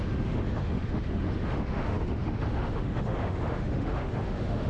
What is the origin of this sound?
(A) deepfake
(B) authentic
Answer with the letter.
A